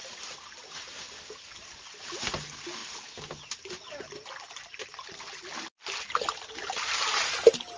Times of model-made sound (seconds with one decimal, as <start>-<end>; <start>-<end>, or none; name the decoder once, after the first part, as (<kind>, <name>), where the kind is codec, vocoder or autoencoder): none